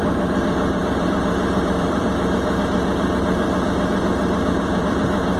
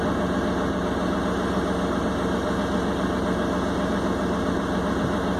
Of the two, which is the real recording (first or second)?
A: second